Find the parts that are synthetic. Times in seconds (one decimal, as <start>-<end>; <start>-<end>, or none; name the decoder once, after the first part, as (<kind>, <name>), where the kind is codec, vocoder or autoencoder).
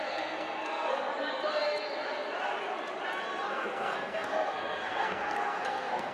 0.0-1.1 (codec, SNAC); 3.5-6.1